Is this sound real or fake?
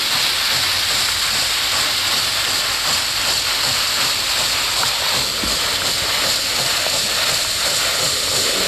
real